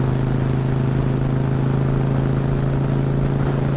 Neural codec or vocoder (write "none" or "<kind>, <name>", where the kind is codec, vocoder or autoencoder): none